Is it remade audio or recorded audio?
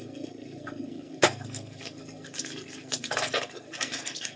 remade